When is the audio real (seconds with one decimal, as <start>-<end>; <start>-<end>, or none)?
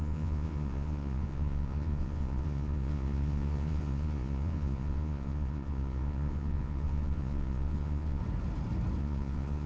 8.2-9.0